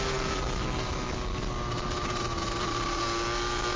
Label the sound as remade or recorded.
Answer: recorded